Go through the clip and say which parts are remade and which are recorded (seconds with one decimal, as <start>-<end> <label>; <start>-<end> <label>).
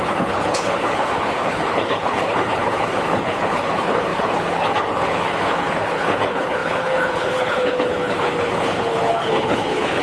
0.0-10.0 remade